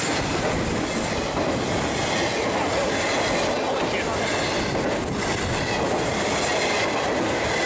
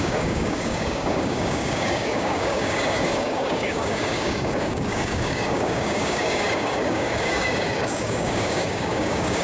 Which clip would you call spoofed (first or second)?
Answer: second